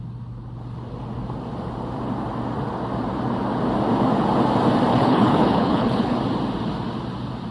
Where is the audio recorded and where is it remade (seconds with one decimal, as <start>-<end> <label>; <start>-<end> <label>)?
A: 0.0-4.9 recorded; 4.9-6.2 remade; 6.2-7.5 recorded